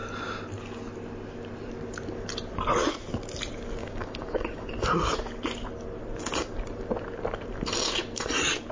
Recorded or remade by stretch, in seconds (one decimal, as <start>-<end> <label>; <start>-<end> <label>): 0.0-3.8 recorded; 3.8-4.7 remade; 4.7-8.7 recorded